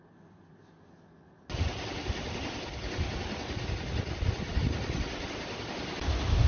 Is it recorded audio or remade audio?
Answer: recorded